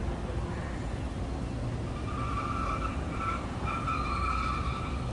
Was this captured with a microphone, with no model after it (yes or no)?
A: yes